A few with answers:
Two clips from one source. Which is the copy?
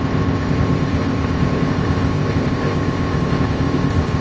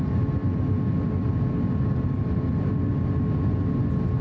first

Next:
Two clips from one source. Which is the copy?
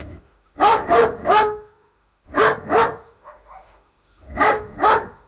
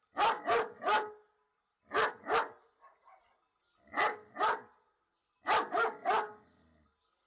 first